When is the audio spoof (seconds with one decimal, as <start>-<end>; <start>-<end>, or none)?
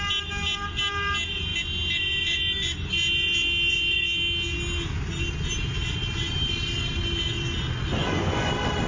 8.0-8.5